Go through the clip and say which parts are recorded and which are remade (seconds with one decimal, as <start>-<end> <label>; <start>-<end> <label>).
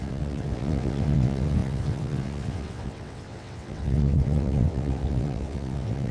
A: 0.0-6.1 remade